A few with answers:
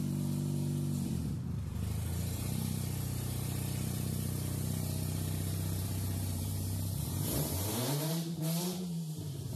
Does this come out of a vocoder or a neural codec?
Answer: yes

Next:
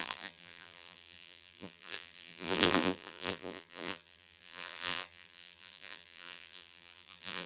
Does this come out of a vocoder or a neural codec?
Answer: yes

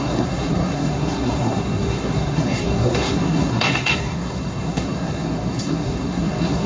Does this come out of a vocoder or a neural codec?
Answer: yes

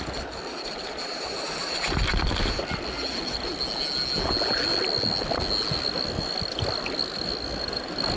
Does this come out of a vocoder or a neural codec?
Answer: no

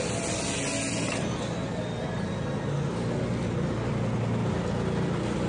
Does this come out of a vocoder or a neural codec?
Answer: no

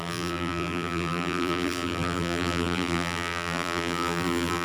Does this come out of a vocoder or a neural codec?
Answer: yes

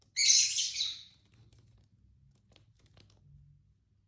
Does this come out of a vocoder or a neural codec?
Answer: no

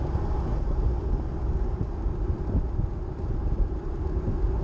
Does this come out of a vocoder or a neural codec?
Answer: no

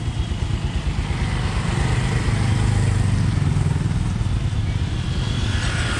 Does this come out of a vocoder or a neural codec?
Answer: no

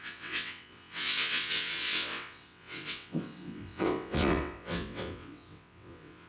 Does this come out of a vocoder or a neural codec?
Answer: yes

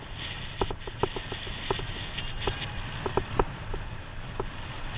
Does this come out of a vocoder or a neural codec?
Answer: no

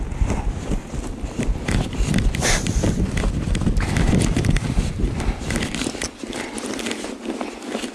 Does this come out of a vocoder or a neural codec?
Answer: no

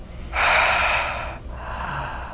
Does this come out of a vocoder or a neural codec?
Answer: no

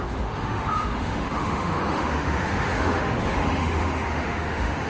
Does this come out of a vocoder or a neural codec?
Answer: yes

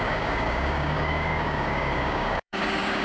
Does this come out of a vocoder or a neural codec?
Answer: yes